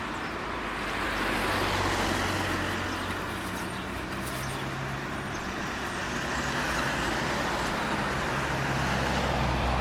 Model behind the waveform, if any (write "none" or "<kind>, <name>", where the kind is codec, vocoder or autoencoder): none